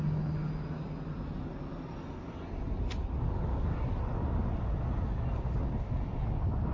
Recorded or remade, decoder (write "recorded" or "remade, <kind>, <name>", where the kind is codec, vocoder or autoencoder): recorded